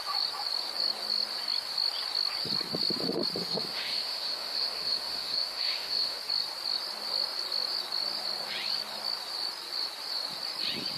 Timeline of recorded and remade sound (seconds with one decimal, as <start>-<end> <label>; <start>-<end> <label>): 0.0-3.4 recorded; 3.4-6.2 remade; 6.2-11.0 recorded